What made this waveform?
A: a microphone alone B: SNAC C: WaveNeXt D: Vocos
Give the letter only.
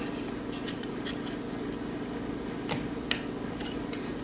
A